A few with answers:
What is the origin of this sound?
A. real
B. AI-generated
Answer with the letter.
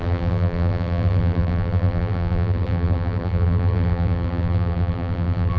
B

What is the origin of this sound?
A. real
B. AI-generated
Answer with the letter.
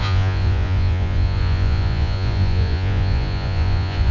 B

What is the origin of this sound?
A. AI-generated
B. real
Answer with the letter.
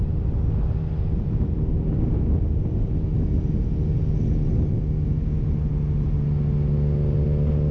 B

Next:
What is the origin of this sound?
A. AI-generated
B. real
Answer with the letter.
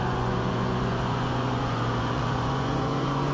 A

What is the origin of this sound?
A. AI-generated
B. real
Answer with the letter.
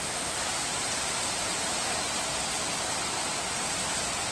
B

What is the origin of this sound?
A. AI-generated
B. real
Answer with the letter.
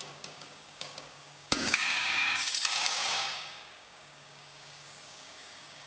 A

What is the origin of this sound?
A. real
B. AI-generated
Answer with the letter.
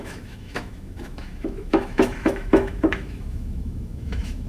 B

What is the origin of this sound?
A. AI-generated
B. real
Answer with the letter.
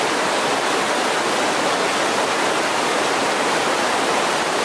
B